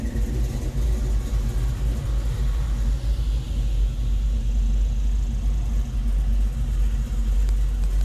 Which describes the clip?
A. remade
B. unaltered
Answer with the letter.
B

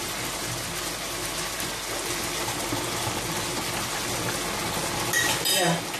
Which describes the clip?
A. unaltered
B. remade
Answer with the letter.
A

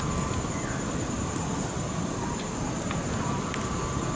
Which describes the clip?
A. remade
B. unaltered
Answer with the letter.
B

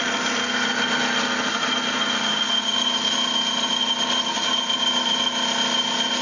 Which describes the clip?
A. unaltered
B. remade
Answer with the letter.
A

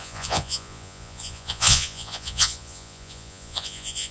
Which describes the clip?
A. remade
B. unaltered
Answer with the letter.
A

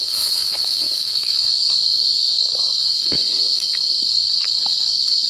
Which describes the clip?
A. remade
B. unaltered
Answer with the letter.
A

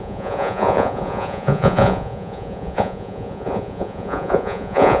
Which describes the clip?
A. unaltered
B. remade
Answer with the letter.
B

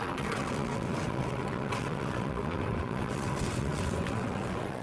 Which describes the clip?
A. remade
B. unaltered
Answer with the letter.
A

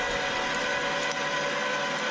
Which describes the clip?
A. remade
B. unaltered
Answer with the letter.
B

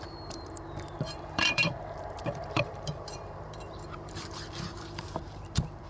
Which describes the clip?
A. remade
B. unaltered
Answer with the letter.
A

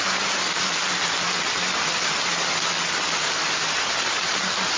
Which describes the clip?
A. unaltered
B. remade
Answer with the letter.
A